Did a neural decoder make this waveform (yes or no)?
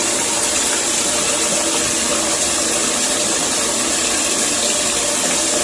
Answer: no